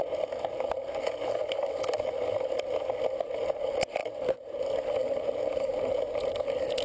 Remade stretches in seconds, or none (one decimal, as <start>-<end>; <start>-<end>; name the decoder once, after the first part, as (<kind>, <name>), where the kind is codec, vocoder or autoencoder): 4.0-6.3 (vocoder, BigVGAN v2)